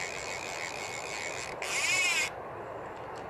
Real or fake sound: real